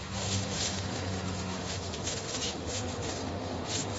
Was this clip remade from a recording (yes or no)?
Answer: yes